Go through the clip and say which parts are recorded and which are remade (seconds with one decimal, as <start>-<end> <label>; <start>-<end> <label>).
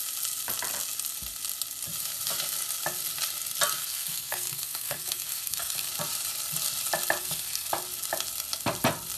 0.0-3.8 recorded; 3.8-5.9 remade; 5.9-7.2 recorded; 7.2-7.7 remade; 7.7-9.2 recorded